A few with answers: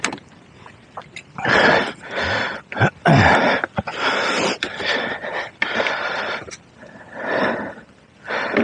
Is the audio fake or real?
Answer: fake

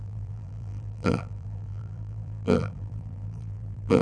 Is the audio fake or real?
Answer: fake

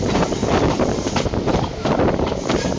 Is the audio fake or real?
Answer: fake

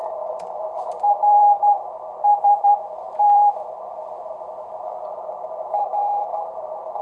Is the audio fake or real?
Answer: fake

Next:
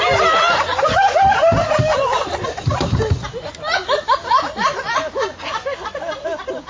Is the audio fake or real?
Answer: real